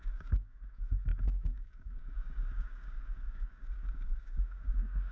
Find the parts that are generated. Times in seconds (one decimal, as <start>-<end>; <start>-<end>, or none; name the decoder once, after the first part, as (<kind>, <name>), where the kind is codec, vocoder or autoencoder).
0.0-5.1 (codec, DAC)